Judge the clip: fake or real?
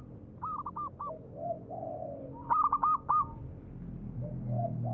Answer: real